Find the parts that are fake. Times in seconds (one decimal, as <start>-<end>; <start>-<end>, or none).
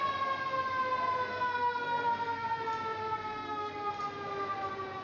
1.3-2.6; 3.0-3.9